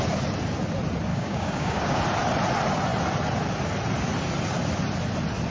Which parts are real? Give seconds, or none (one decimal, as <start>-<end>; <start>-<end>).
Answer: 0.0-1.1; 2.0-5.5